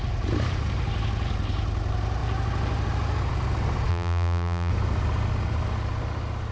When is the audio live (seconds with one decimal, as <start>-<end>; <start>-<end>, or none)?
0.0-3.9; 4.7-6.5